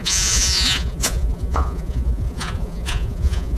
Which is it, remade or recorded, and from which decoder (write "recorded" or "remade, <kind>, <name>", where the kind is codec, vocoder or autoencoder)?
remade, vocoder, Vocos